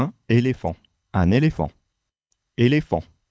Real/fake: fake